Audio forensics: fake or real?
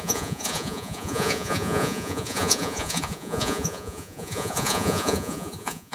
fake